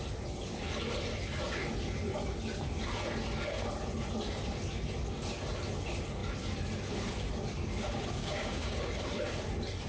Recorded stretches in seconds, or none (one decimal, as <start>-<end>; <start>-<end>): 0.0-8.2; 8.9-9.9